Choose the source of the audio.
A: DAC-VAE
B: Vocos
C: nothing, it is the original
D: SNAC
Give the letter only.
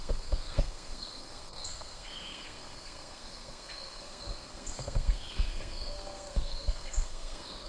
D